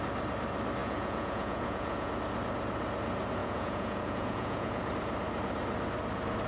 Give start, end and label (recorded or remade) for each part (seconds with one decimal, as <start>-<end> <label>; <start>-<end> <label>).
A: 0.0-0.8 recorded; 0.8-2.1 remade; 2.1-3.4 recorded; 3.4-4.9 remade; 4.9-6.5 recorded